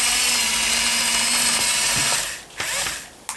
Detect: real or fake real